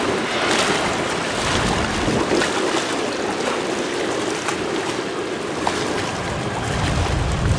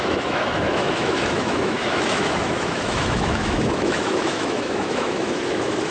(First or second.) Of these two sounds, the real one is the first